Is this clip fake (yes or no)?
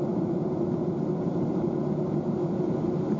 no